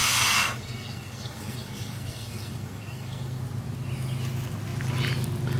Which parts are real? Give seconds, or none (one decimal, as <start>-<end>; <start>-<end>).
3.4-5.6